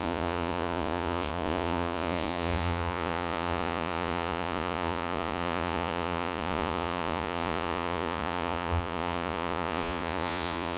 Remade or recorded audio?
remade